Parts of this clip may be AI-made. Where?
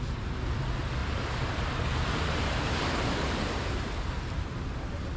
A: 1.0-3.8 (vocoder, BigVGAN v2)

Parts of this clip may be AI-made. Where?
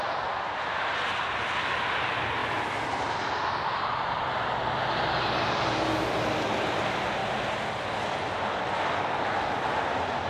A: none